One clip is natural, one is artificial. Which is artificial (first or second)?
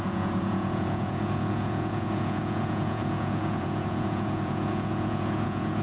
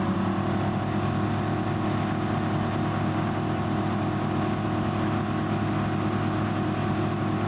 first